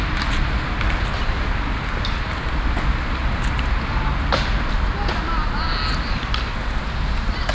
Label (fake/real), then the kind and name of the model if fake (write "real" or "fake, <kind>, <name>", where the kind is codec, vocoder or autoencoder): real